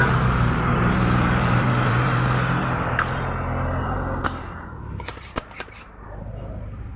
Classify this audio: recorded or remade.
remade